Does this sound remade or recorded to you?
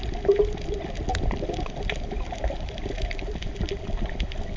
remade